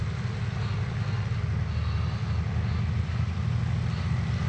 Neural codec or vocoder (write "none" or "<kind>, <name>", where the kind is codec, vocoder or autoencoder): none